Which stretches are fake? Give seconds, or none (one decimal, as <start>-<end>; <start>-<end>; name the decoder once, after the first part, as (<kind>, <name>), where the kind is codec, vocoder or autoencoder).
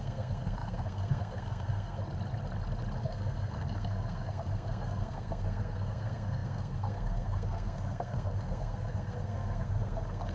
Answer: 0.0-2.0 (codec, SNAC); 3.0-10.3